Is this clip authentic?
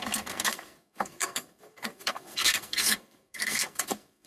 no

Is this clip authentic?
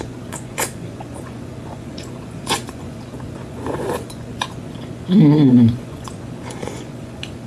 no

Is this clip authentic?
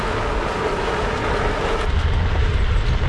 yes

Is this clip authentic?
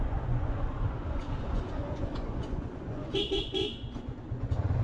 no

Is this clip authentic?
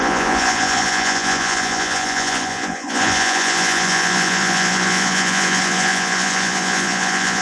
no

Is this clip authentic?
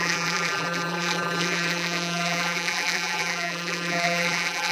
no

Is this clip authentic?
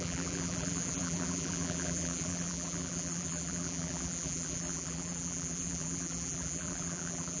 no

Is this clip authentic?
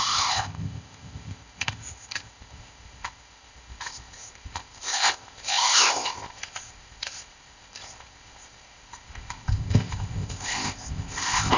no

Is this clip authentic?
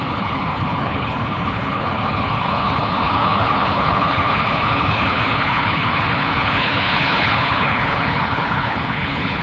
no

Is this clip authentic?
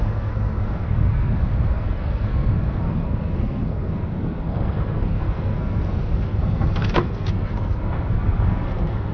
no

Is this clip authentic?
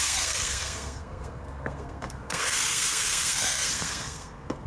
no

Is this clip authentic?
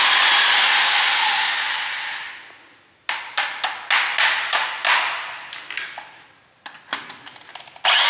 yes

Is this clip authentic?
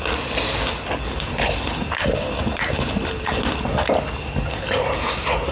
yes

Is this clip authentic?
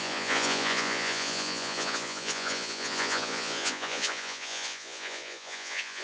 no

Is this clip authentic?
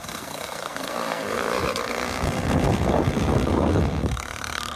no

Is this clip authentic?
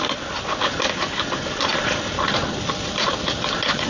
yes